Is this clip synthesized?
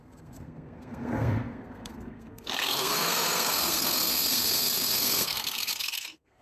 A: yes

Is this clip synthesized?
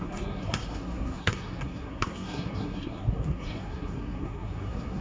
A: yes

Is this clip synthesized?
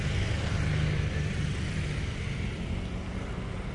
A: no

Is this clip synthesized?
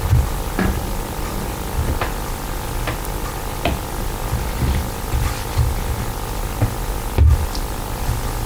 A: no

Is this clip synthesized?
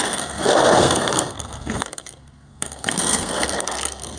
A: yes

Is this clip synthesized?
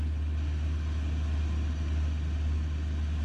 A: no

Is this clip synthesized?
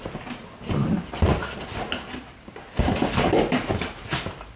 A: no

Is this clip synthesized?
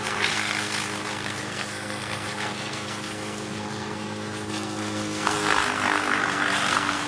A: yes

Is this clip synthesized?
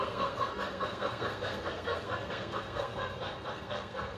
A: yes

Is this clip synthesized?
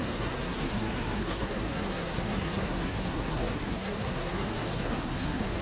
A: yes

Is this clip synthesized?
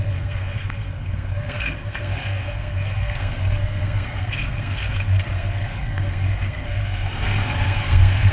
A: yes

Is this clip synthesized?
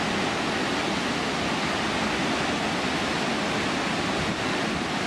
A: no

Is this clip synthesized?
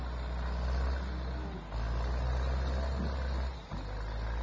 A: no